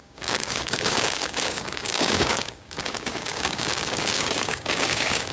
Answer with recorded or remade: remade